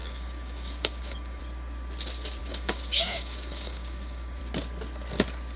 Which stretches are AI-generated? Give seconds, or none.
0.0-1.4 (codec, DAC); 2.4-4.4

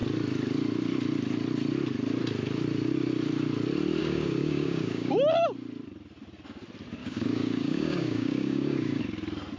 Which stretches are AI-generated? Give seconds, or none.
4.0-5.1 (codec, DAC); 7.0-9.0

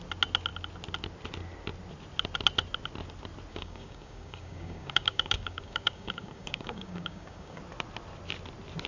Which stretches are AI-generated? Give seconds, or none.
3.5-7.6 (codec, DAC)

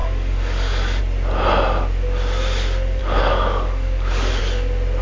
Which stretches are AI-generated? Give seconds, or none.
0.0-1.0 (codec, DAC); 3.0-4.4

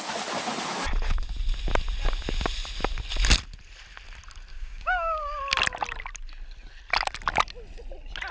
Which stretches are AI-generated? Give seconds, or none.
4.5-5.4 (codec, DAC)